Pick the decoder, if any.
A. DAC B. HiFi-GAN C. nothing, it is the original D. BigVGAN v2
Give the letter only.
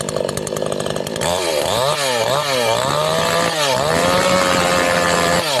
C